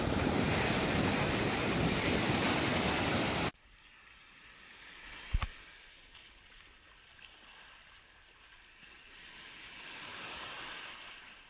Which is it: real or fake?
real